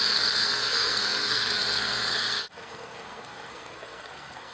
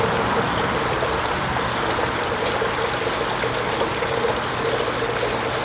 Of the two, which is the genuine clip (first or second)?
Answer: second